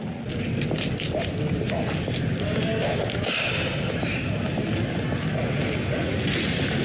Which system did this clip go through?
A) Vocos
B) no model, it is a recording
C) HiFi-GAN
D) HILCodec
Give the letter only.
B